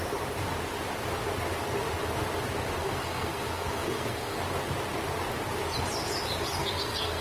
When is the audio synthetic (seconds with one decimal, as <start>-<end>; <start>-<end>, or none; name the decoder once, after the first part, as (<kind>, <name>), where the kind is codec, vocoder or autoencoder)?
2.8-4.4 (codec, SNAC); 6.6-7.2